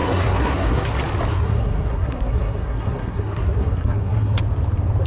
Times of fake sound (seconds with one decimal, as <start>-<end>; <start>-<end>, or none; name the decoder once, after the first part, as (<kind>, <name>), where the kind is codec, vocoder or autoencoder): 0.0-0.9 (codec, SNAC); 1.3-4.4